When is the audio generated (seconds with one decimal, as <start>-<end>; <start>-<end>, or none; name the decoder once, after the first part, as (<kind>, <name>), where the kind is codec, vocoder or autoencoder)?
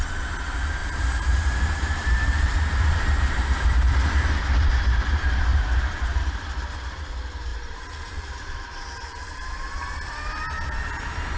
0.8-4.1 (vocoder, BigVGAN v2); 5.5-7.1; 7.5-9.5